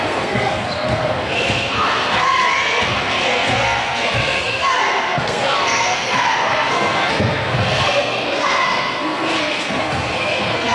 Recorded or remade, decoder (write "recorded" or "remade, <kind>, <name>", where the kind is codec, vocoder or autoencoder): remade, codec, SNAC